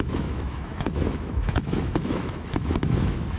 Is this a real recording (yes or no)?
no